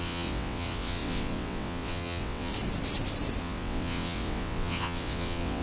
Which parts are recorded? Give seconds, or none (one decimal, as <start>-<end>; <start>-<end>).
2.5-3.4